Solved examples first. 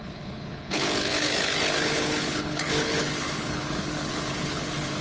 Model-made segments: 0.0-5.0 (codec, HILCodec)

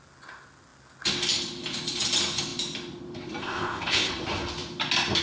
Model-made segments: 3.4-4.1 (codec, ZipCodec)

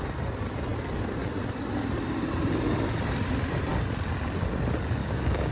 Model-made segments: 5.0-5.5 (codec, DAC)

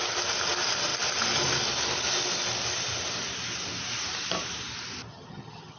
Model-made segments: 5.1-5.8 (vocoder, HiFi-GAN)